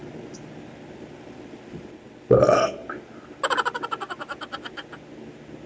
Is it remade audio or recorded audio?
recorded